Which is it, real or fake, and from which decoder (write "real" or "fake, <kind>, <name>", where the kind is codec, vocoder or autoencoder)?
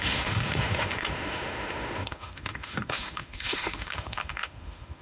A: fake, autoencoder, DAC-VAE